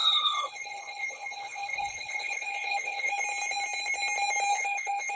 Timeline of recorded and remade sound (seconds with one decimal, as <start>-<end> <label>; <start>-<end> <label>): 0.0-3.1 remade; 3.1-4.5 recorded; 4.5-5.2 remade